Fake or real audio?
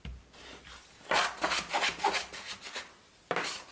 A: real